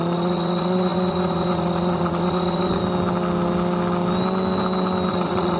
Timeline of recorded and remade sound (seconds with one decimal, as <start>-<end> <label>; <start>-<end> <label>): 0.0-2.8 remade; 2.8-5.1 recorded; 5.1-5.6 remade